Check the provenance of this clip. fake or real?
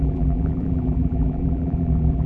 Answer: fake